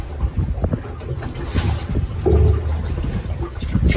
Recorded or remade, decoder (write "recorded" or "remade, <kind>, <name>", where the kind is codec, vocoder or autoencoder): recorded